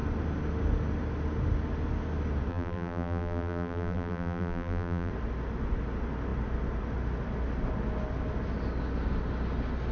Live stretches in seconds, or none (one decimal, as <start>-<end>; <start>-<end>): 0.0-2.5; 5.1-9.9